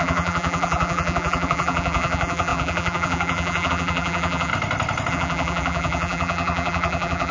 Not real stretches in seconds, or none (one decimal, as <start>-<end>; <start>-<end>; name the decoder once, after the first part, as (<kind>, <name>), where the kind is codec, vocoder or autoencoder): 0.0-4.5 (vocoder, BigVGAN v2); 5.1-7.3